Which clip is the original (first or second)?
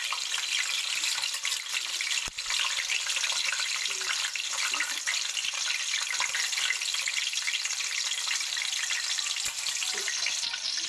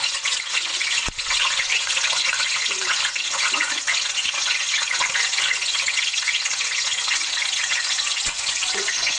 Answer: first